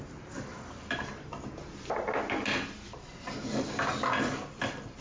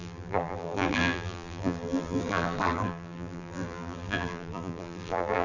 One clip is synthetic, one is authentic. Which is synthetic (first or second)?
second